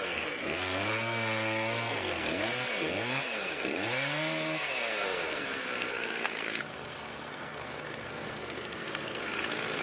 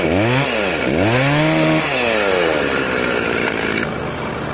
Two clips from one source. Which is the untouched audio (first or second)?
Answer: second